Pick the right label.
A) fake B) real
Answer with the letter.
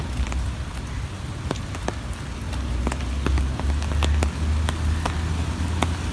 B